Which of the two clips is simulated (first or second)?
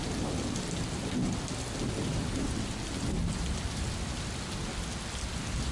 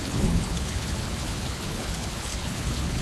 second